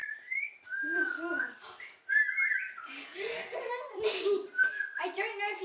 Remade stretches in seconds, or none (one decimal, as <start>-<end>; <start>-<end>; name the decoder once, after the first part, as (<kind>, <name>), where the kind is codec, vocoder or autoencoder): 0.0-1.6 (codec, DAC); 2.8-3.7